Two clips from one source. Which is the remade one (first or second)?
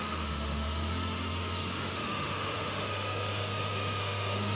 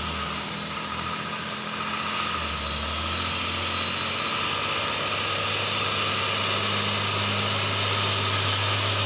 first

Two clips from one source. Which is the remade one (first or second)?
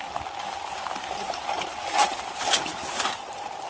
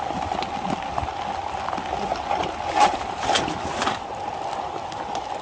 first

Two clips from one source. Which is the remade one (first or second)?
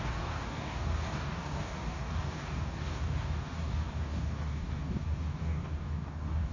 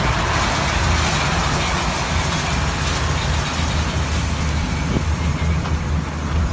first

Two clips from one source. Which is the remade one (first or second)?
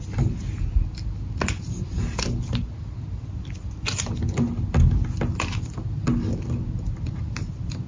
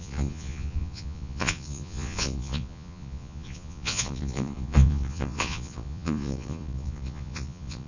second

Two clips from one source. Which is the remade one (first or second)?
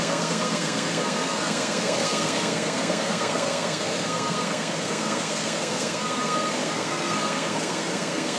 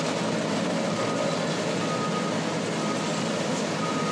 first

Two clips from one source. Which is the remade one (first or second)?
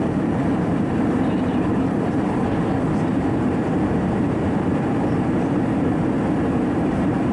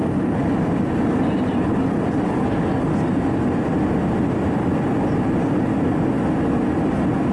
first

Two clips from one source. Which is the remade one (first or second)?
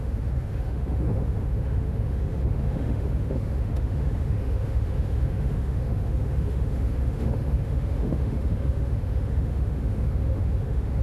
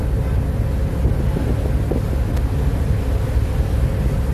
first